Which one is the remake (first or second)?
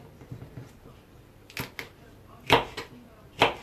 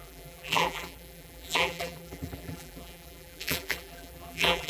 second